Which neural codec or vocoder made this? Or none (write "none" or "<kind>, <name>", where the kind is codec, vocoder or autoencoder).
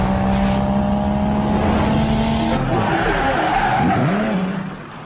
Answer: none